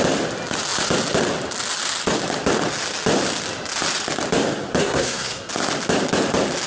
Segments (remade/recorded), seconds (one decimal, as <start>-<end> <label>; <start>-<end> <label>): 0.0-4.8 recorded; 4.8-5.5 remade; 5.5-6.7 recorded

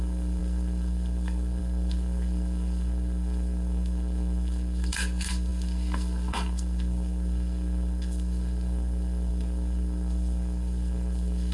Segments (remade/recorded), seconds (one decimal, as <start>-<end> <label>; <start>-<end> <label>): 0.0-11.5 remade

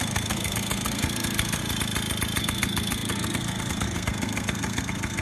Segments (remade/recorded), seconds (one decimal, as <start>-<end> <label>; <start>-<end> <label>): 0.0-1.6 remade; 1.6-2.4 recorded; 2.4-5.2 remade

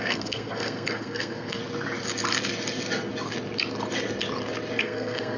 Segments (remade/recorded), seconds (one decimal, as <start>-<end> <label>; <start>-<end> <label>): 0.0-1.6 remade; 1.6-4.8 recorded; 4.8-5.4 remade

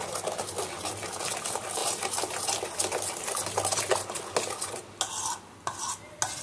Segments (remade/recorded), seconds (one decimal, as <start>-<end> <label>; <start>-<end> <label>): 0.0-6.4 recorded

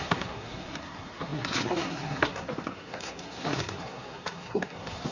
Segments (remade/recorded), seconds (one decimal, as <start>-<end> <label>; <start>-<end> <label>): 0.0-5.1 remade

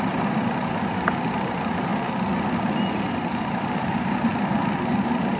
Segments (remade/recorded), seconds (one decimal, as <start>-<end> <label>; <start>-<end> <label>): 0.0-1.9 remade; 1.9-3.1 recorded; 3.1-4.3 remade; 4.3-5.0 recorded; 5.0-5.4 remade

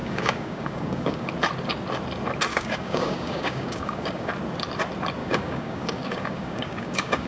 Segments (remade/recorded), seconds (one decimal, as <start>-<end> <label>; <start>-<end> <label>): 0.0-1.3 remade; 1.3-2.5 recorded; 2.5-4.3 remade; 4.3-5.2 recorded; 5.2-7.3 remade